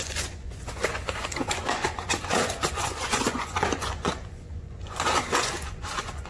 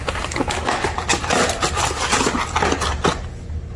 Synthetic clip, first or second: first